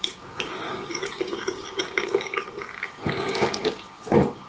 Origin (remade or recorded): remade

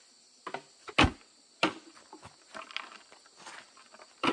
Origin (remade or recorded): recorded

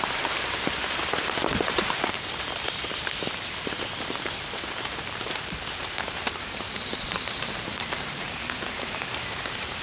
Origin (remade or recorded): remade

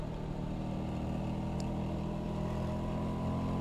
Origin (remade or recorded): recorded